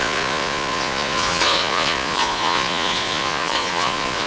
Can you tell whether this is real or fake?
fake